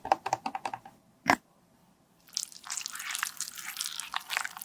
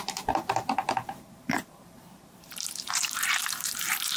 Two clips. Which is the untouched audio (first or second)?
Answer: first